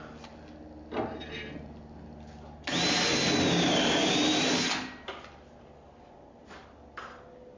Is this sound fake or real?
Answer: real